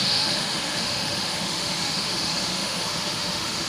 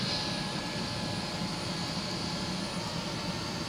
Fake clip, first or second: first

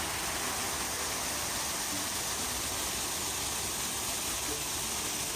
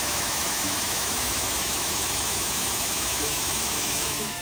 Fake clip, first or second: second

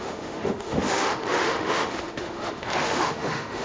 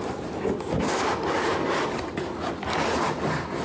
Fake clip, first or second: first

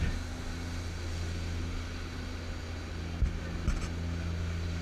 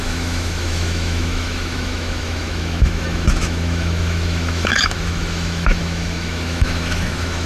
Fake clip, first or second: second